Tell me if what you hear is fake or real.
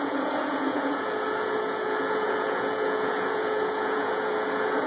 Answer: fake